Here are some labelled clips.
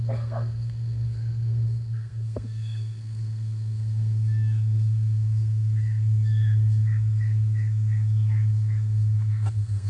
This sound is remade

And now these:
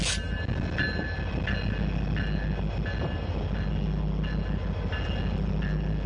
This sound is recorded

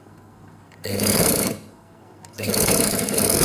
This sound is remade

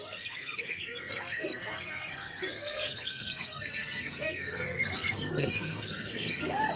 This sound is remade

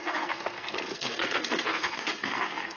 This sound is remade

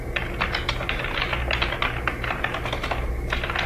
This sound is recorded